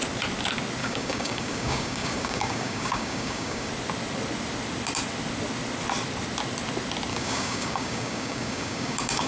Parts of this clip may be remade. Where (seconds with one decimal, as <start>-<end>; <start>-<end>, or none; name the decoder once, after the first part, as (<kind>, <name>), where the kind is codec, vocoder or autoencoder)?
0.8-3.7 (codec, DAC); 7.1-9.3